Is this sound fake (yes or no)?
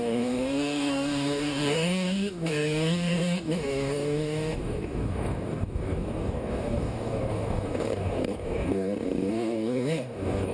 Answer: yes